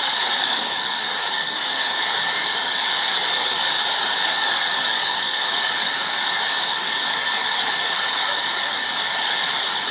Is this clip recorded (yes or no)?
no